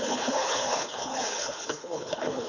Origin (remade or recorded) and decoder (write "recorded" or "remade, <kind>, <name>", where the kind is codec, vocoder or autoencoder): remade, codec, HILCodec